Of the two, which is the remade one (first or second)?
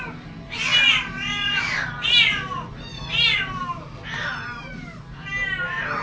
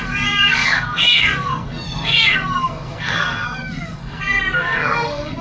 second